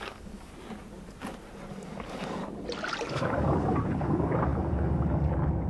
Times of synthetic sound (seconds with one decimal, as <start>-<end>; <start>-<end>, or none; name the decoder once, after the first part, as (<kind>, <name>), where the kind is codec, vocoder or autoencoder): 0.0-0.5 (codec, DAC); 1.7-2.4; 3.1-5.7